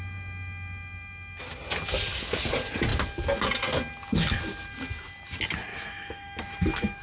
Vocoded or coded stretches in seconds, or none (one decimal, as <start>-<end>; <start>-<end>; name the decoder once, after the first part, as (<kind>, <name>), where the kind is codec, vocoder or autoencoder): 5.7-7.0 (autoencoder, DAC-VAE)